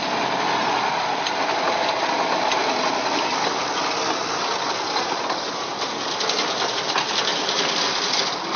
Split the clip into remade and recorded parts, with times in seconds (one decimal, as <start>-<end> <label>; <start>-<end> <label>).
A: 0.0-7.3 recorded; 7.3-7.9 remade; 7.9-8.6 recorded